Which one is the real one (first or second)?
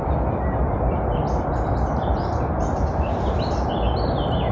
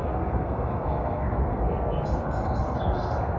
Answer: first